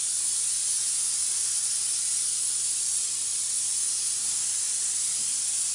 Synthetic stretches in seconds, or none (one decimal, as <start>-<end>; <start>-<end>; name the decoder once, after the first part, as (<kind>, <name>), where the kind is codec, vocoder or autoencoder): none